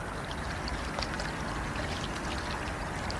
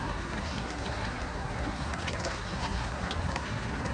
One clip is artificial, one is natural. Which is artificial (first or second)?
second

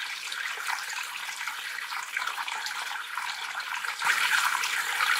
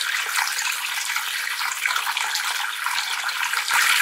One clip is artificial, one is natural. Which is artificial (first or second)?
first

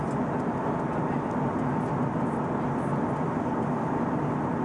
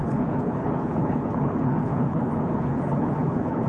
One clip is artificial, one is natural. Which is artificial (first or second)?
second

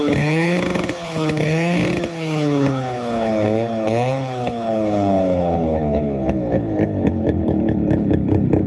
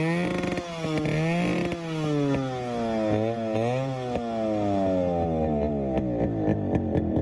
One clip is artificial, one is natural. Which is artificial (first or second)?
first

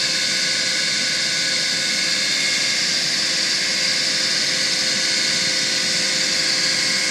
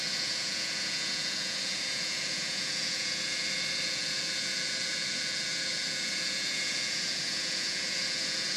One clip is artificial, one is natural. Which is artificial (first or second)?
second